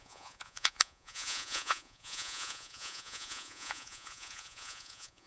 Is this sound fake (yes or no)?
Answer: yes